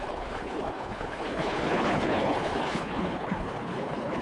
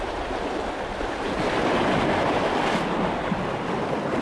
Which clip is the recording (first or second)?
second